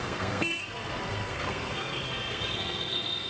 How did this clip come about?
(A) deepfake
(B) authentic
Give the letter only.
A